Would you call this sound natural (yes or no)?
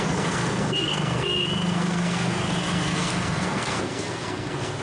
no